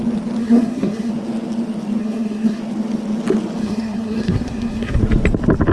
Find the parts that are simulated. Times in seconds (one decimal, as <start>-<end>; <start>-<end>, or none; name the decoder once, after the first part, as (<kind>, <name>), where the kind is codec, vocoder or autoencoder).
0.4-1.1 (codec, SNAC); 2.0-2.6; 3.6-5.0